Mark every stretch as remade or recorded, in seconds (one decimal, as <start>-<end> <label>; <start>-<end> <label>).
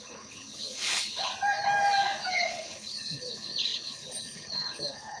0.0-1.3 remade; 1.3-2.3 recorded; 2.3-5.2 remade